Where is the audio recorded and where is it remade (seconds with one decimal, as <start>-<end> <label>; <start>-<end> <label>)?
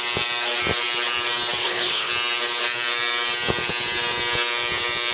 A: 0.0-1.6 recorded; 1.6-2.1 remade; 2.1-5.1 recorded